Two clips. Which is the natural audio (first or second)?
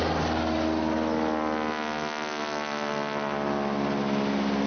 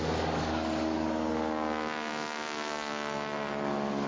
first